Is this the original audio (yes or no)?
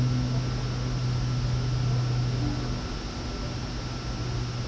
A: yes